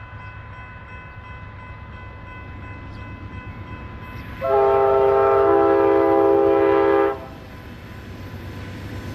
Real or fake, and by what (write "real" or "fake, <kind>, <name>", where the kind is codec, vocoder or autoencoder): real